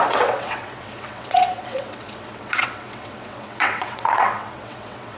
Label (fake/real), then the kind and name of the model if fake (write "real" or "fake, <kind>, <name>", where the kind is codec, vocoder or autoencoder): fake, vocoder, WaveNeXt